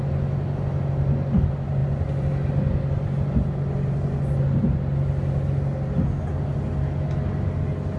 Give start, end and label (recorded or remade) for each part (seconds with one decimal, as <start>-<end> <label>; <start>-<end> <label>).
0.0-8.0 recorded